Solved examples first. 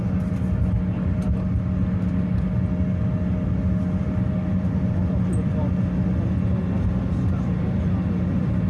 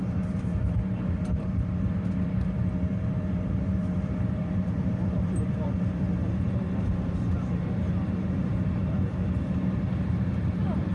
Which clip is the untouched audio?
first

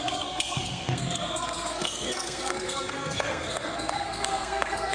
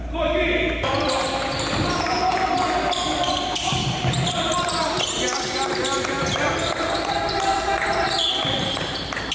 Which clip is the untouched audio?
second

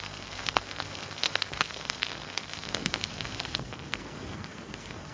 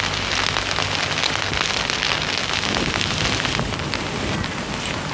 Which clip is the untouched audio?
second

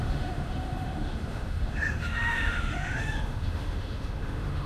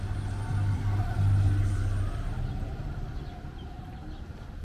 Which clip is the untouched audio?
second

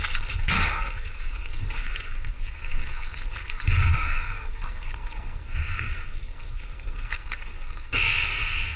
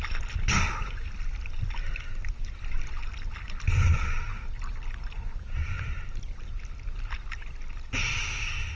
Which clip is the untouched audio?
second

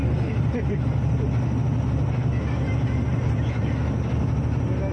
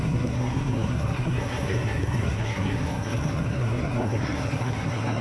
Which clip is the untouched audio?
first